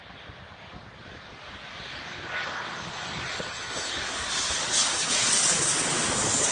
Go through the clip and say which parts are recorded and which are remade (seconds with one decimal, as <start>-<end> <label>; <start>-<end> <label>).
0.0-3.9 recorded; 3.9-6.5 remade